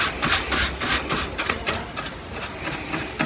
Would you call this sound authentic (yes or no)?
yes